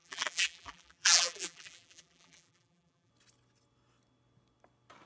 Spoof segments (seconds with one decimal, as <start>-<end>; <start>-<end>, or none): 0.0-3.1